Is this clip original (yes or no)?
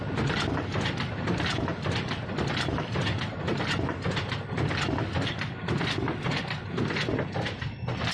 yes